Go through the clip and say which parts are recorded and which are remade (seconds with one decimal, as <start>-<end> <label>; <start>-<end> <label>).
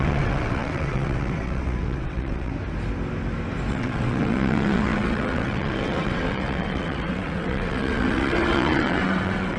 0.0-2.5 remade; 2.5-3.7 recorded; 3.7-9.6 remade